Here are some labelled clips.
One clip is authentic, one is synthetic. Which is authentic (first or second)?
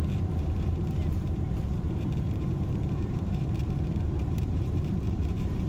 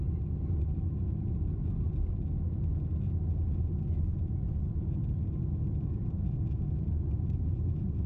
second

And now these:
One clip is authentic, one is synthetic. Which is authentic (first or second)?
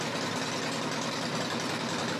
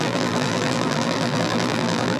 first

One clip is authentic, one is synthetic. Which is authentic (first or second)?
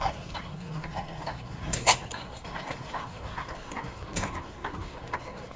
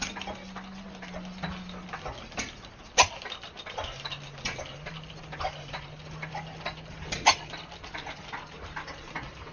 second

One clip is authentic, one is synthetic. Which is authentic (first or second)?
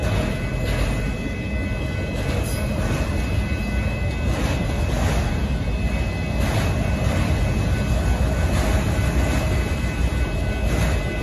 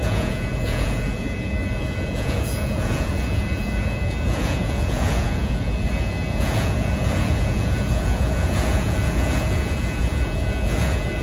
first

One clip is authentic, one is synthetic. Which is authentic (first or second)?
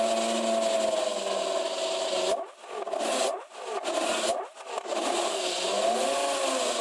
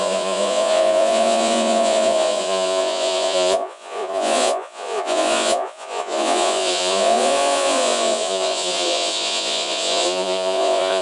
first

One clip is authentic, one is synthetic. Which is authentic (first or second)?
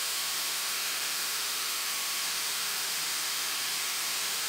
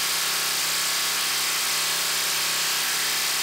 second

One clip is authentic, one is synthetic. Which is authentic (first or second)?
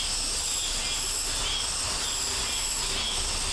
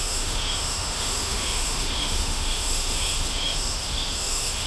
first